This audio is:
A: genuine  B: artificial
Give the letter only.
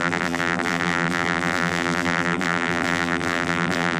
B